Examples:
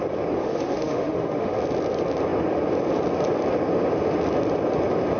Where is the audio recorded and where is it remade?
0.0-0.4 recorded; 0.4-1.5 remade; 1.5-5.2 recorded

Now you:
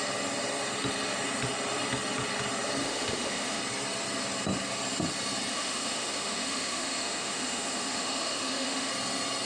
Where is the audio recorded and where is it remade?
0.0-2.8 recorded; 2.8-3.6 remade; 3.6-5.5 recorded; 5.5-8.9 remade; 8.9-9.5 recorded

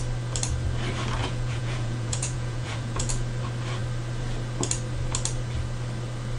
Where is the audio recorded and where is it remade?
0.0-1.2 recorded; 1.2-3.1 remade; 3.1-6.4 recorded

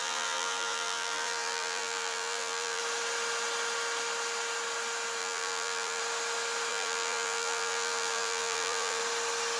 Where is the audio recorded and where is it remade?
0.0-2.8 remade; 2.8-5.2 recorded; 5.2-6.0 remade; 6.0-6.7 recorded; 6.7-9.0 remade; 9.0-9.6 recorded

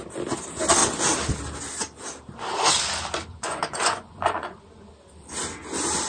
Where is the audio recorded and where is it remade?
0.0-3.3 recorded; 3.3-4.6 remade; 4.6-6.1 recorded

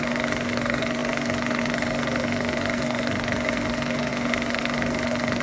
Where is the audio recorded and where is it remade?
0.0-5.4 remade

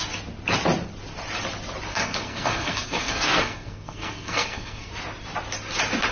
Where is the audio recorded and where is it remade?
0.0-1.9 recorded; 1.9-4.9 remade; 4.9-6.1 recorded